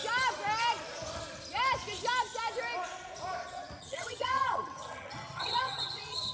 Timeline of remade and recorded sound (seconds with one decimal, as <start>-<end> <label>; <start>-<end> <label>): 0.0-3.8 recorded; 3.8-6.3 remade